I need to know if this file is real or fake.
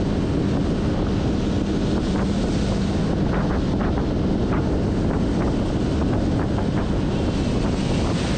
real